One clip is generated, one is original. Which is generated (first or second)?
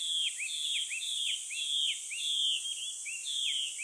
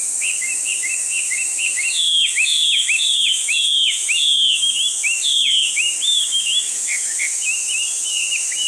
second